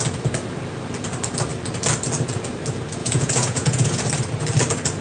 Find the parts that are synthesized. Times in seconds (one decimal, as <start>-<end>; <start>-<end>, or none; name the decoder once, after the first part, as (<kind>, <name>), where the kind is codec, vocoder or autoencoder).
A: 3.0-4.0 (vocoder, Vocos)